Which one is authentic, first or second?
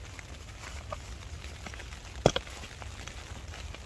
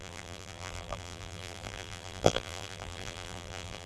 first